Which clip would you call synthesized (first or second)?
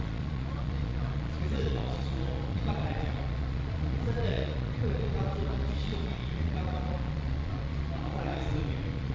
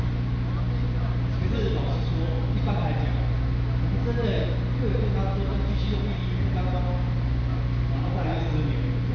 first